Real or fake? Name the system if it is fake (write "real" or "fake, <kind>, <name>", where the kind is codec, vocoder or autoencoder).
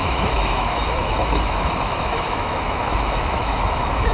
fake, autoencoder, DAC-VAE